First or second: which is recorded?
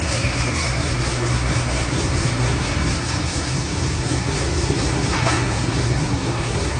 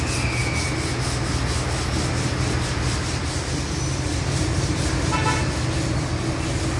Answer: second